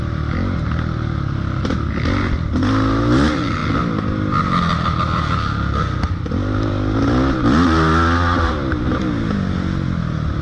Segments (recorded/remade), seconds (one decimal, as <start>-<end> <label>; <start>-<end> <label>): 0.0-10.4 recorded